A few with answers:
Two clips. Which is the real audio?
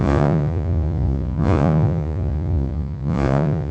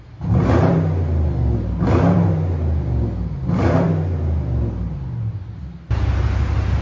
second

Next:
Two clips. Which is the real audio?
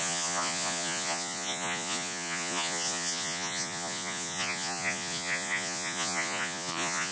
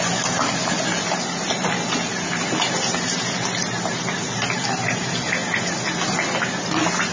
second